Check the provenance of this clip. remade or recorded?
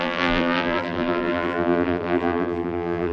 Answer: remade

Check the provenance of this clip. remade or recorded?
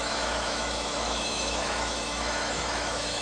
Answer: remade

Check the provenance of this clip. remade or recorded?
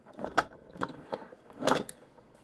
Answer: remade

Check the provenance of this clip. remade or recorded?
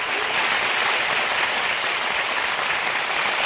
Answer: recorded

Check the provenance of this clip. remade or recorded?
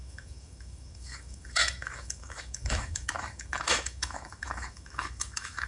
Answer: remade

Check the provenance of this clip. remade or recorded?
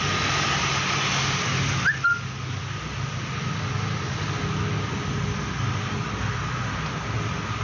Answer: recorded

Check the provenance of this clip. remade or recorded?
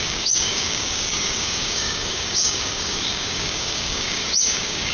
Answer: remade